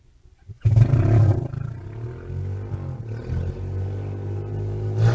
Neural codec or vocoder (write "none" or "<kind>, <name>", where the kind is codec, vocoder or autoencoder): none